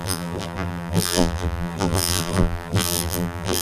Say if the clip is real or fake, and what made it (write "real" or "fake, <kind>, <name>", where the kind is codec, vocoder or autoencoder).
fake, vocoder, BigVGAN v2